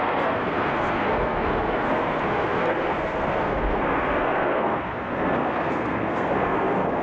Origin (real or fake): fake